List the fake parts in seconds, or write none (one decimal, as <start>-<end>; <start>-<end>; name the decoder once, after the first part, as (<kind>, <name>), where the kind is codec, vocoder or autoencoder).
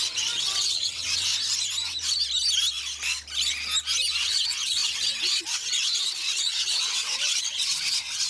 0.0-1.3 (vocoder, WaveNeXt); 4.2-8.3